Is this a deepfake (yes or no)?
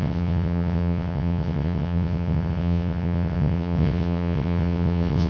yes